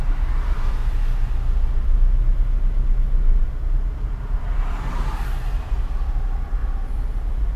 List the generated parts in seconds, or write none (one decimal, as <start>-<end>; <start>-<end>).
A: 0.0-0.8; 4.4-6.6